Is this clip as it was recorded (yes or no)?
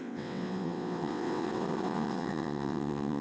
no